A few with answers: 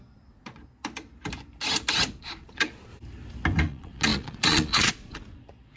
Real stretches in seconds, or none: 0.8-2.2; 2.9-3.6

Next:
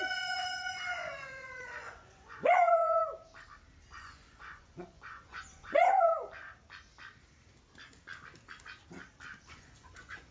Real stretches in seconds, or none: 3.0-3.9; 6.1-9.5

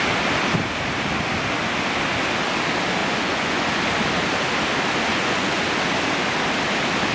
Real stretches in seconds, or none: 0.0-3.0; 3.7-5.1; 5.6-7.1

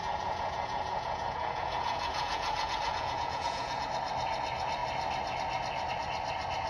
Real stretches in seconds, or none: 3.9-6.7

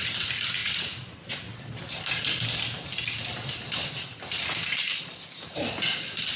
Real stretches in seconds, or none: 0.0-0.6; 1.1-6.4

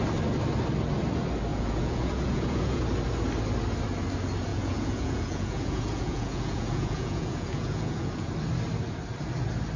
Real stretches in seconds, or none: 0.0-1.5; 2.8-4.5; 8.3-9.8

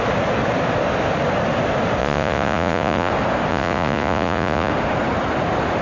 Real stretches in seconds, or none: 0.0-2.0; 3.1-3.5; 4.7-5.8

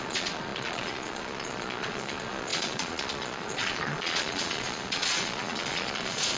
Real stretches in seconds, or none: none